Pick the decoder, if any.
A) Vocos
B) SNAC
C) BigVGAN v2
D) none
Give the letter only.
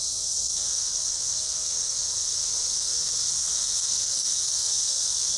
B